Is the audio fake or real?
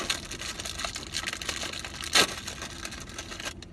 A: real